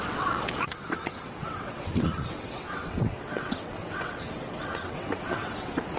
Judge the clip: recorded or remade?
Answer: remade